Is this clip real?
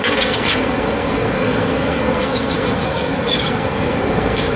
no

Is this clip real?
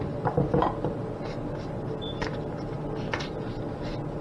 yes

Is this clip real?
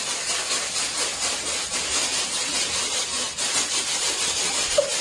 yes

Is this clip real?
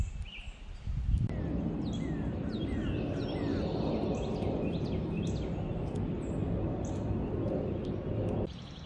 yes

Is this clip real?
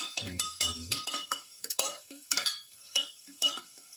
no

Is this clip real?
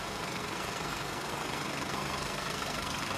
no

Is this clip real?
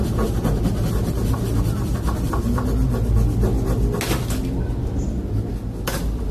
yes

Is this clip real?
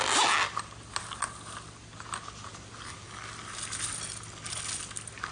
yes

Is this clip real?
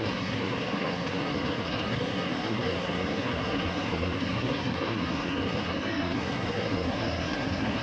no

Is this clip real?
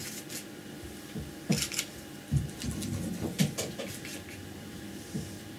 yes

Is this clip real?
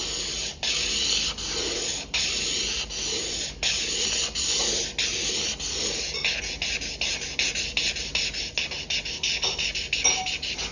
yes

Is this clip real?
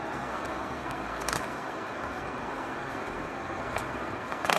no